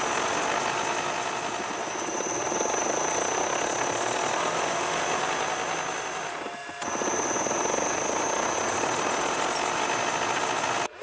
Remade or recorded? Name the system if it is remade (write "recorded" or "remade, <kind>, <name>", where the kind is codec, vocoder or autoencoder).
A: recorded